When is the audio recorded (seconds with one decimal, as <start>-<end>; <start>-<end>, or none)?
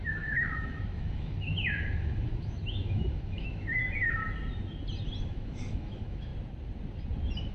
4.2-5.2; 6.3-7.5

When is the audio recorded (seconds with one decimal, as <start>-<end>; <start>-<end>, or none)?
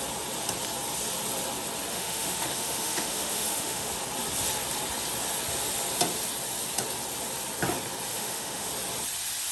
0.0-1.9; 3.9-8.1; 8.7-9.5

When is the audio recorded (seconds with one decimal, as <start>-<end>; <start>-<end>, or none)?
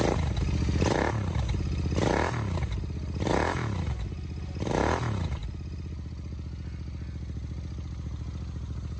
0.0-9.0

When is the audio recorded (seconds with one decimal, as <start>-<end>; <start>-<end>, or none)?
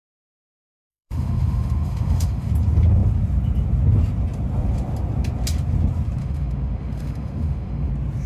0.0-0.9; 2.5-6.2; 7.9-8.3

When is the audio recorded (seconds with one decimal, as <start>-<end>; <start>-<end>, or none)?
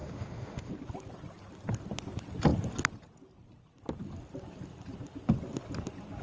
0.7-6.2